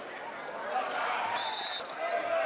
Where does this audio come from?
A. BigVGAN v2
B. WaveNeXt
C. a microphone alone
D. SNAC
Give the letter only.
C